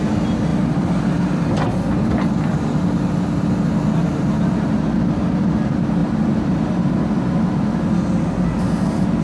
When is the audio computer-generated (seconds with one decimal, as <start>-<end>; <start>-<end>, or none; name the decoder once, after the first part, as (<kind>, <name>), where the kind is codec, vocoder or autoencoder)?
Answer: 0.5-1.2 (vocoder, BigVGAN v2); 6.0-7.9